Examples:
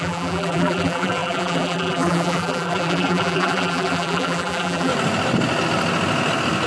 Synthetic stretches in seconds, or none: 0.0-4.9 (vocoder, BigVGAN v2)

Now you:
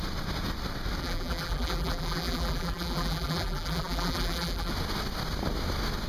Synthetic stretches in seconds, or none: 1.0-4.7 (vocoder, BigVGAN v2)

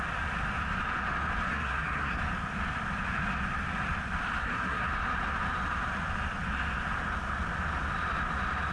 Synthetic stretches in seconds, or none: 1.5-2.2 (codec, SNAC); 4.4-4.9

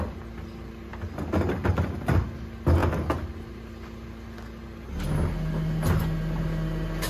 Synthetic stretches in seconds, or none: none

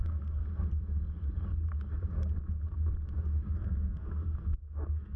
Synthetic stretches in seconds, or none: 0.0-0.4 (codec, SNAC); 3.5-5.2

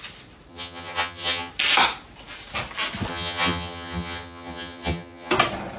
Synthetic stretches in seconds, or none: 0.5-1.5 (vocoder, HiFi-GAN); 3.1-5.3